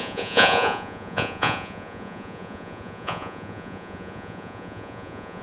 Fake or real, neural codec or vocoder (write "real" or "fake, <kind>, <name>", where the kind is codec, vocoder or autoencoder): fake, vocoder, Vocos